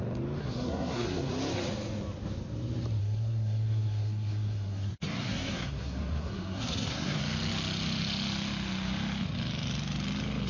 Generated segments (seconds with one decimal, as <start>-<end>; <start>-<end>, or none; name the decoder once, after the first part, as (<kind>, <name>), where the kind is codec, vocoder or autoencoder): 0.4-1.3 (codec, SNAC); 3.0-7.2